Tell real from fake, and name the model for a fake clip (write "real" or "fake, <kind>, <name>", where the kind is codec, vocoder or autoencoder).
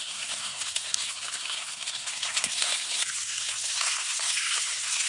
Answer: fake, codec, SNAC